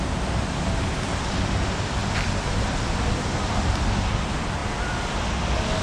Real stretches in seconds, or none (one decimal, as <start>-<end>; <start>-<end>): 0.0-5.8

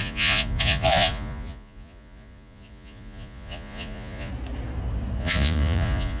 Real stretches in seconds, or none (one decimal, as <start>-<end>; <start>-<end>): 4.3-5.2

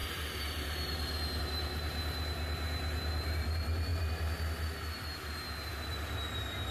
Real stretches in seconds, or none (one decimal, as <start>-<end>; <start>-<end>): 0.0-6.7

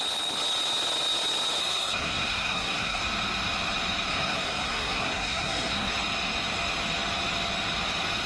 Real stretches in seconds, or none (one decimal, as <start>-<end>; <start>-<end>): 0.0-1.6; 3.0-4.1; 5.9-8.3